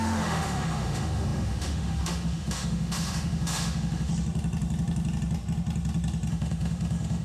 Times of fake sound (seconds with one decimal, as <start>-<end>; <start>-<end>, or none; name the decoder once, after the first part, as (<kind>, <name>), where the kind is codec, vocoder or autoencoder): 0.0-4.1 (autoencoder, DAC-VAE); 6.3-7.2